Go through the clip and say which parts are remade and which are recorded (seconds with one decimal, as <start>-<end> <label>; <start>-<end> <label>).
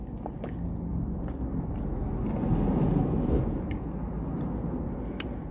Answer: 0.0-0.9 recorded; 0.9-1.7 remade; 1.7-5.5 recorded